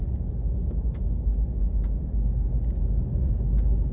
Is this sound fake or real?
real